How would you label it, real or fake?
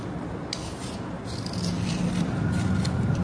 real